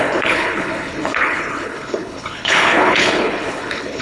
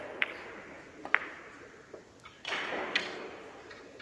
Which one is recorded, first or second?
second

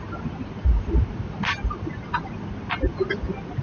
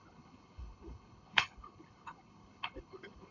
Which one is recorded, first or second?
first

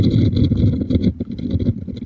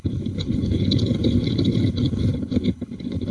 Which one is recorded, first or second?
first